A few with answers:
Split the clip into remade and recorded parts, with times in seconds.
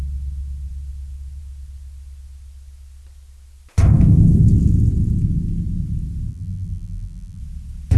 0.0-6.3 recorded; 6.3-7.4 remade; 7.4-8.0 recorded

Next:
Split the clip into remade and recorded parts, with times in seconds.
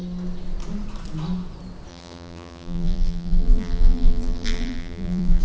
0.0-1.9 recorded; 1.9-5.4 remade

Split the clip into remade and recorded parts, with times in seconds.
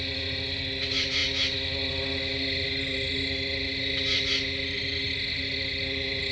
0.0-6.3 recorded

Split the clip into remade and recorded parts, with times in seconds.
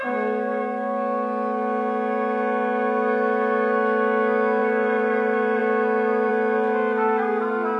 0.0-4.6 recorded; 4.6-5.6 remade; 5.6-7.8 recorded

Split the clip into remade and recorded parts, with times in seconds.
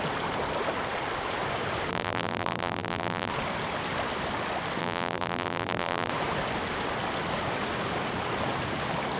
0.0-1.9 recorded; 1.9-3.3 remade; 3.3-4.8 recorded; 4.8-6.1 remade; 6.1-9.2 recorded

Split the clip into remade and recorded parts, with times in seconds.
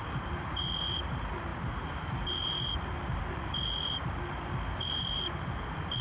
0.0-6.0 remade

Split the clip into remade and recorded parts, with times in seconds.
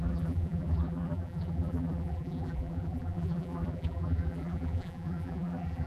0.0-5.9 remade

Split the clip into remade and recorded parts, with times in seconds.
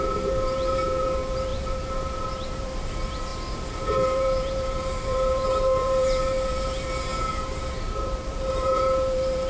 0.0-3.3 remade; 3.3-3.8 recorded; 3.8-9.5 remade